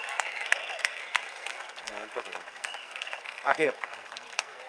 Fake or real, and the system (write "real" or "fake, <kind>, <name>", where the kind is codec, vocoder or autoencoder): fake, codec, SNAC